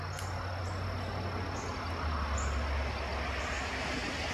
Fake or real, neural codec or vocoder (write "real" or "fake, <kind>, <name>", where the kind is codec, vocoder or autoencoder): real